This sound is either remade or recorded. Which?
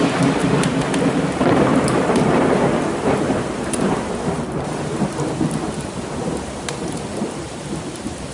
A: remade